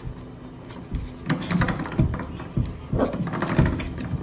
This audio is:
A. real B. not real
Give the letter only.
A